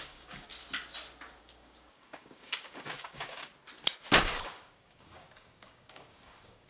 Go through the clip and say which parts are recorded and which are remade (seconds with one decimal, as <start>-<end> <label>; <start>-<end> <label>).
0.0-0.5 remade; 0.5-1.4 recorded; 1.4-3.5 remade; 3.5-4.2 recorded; 4.2-6.7 remade